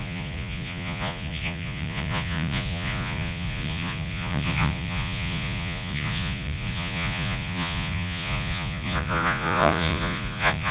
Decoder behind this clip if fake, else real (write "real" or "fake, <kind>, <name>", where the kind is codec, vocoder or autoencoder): fake, vocoder, Vocos